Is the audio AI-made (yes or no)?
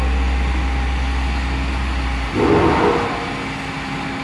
no